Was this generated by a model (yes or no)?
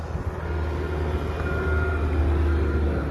no